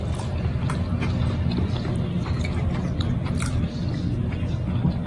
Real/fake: real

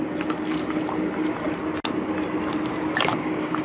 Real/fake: real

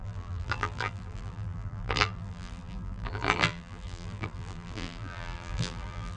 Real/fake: fake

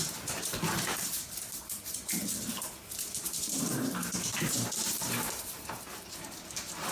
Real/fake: fake